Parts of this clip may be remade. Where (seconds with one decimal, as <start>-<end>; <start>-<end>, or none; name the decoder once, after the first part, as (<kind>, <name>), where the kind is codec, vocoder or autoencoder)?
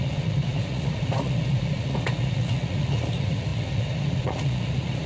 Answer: 0.0-5.1 (vocoder, Vocos)